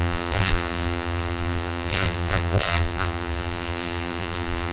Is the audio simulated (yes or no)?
yes